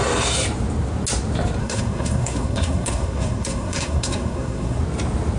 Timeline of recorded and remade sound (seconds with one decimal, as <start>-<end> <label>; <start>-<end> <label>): 0.0-1.6 recorded; 1.6-4.8 remade; 4.8-5.4 recorded